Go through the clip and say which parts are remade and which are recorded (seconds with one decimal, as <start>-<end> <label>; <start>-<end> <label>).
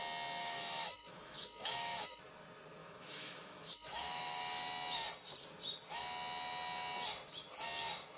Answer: 0.0-0.4 recorded; 0.4-2.2 remade; 2.2-2.8 recorded; 2.8-4.4 remade; 4.4-8.2 recorded